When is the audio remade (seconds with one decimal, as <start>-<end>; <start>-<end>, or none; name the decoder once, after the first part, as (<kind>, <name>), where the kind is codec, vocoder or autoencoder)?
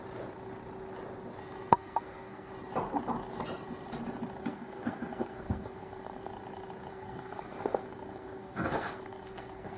1.7-2.5 (codec, SNAC); 4.4-6.3; 6.9-9.8